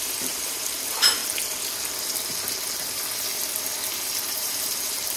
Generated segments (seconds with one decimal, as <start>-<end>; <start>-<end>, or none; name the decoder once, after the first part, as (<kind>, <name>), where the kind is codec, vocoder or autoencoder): 0.0-1.2 (vocoder, BigVGAN v2); 4.3-5.2